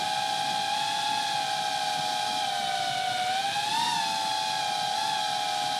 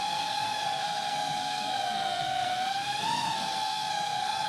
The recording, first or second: first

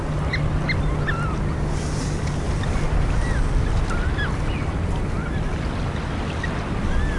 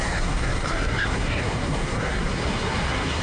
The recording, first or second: first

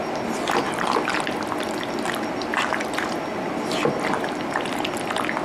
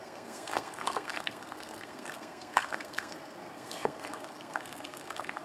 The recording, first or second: first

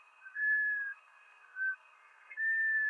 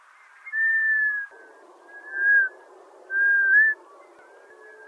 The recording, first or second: second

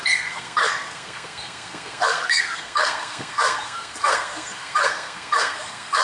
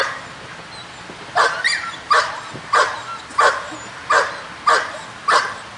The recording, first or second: second